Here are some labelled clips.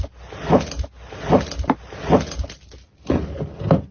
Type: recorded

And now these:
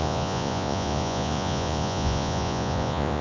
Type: remade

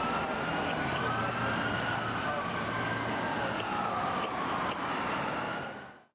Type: recorded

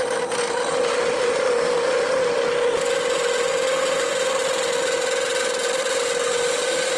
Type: recorded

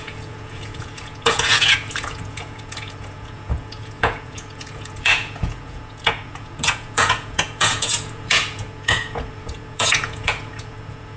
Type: remade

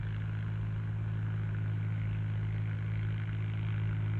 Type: recorded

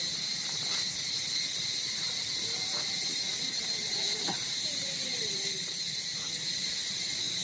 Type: recorded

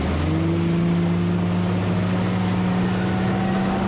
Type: recorded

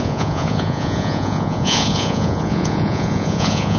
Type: remade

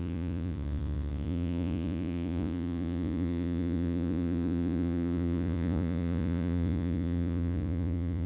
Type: remade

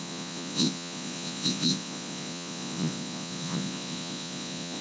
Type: remade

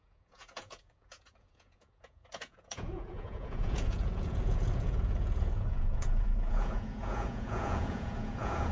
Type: remade